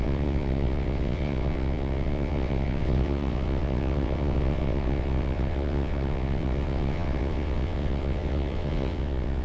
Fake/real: fake